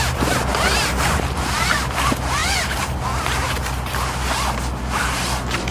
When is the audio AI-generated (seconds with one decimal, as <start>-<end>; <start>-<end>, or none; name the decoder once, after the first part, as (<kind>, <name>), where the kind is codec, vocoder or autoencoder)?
none